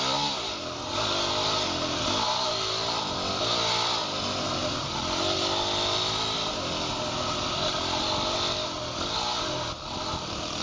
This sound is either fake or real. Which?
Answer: real